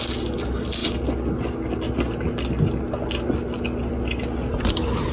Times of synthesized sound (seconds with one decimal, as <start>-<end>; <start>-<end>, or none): none